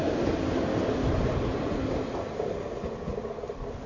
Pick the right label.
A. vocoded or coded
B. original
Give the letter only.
B